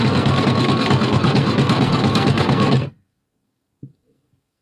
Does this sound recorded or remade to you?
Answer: remade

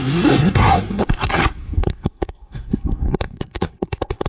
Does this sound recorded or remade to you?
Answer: remade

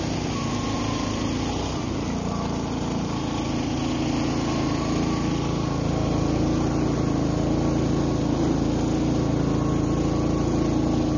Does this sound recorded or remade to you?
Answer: recorded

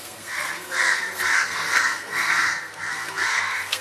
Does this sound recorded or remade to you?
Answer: remade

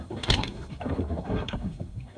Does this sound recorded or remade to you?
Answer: remade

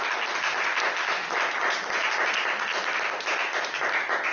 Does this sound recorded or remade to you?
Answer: recorded